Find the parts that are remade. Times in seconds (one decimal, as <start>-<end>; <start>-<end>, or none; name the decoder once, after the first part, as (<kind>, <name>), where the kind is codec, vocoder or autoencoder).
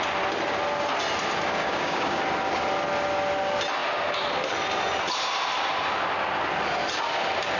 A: 1.6-2.2 (codec, DAC)